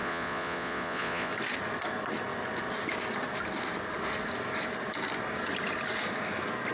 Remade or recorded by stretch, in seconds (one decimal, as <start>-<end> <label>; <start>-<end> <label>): 0.0-1.3 remade; 1.3-6.7 recorded